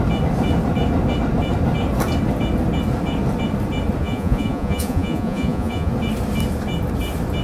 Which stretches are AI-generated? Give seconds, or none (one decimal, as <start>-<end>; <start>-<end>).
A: 4.0-5.9